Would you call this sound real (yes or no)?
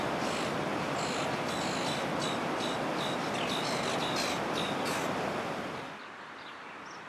yes